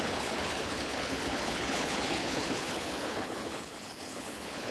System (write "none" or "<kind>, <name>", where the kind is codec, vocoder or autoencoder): codec, HILCodec